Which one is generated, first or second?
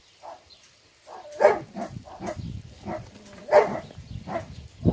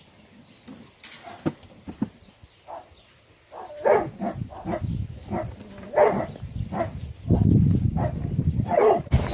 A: first